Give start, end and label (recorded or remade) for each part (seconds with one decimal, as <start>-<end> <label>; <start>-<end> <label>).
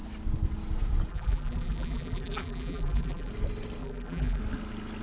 0.0-1.1 recorded; 1.1-3.3 remade; 3.3-3.8 recorded; 3.8-4.4 remade; 4.4-5.0 recorded